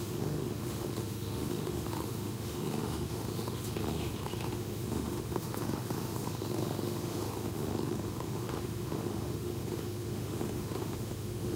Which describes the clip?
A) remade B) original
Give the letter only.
A